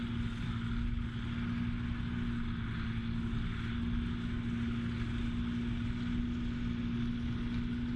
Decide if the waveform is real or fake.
real